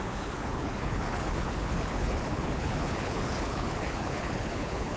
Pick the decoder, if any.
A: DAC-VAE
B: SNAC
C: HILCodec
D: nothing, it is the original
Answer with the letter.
C